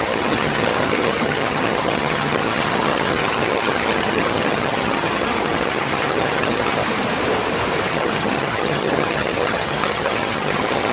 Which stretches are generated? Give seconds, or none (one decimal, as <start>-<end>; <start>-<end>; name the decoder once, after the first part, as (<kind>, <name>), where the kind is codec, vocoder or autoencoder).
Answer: 0.0-6.8 (vocoder, HiFi-GAN); 7.9-10.9